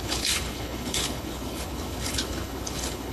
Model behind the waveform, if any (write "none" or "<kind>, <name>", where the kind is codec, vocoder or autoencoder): codec, HILCodec